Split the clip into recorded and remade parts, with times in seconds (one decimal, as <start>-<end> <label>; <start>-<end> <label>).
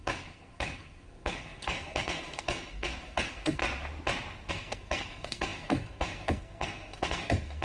0.0-3.6 remade; 3.6-4.5 recorded; 4.5-7.6 remade